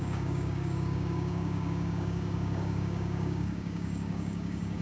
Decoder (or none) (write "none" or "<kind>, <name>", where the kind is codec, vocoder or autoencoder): codec, DAC